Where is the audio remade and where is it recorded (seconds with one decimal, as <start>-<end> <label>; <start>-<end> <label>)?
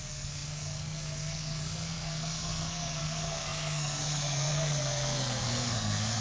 0.0-6.2 remade